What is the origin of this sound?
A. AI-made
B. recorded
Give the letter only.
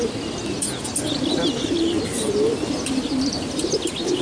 B